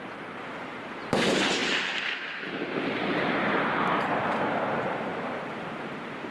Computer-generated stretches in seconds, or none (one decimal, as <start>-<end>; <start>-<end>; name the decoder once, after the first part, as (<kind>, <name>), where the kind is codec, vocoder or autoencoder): none